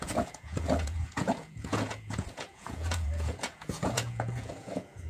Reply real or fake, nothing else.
fake